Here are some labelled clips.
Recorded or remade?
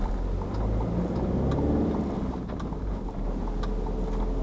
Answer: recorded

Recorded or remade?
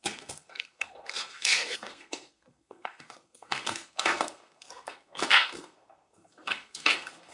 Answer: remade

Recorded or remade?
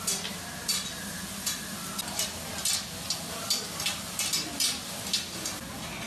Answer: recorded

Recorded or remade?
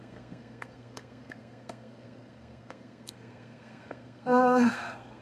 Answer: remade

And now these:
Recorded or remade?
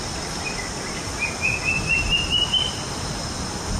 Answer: recorded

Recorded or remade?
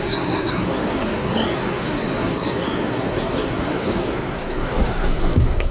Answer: remade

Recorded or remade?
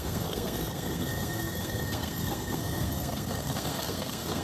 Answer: remade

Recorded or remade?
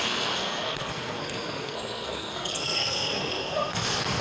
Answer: remade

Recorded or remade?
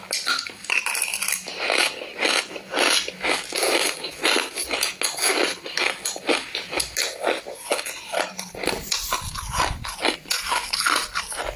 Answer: recorded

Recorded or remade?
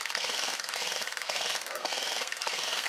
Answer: remade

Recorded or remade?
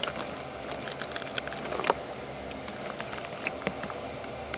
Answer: recorded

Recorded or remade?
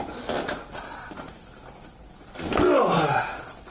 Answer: recorded